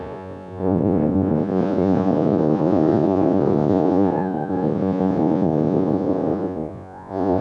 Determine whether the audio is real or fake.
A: fake